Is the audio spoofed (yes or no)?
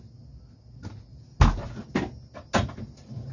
no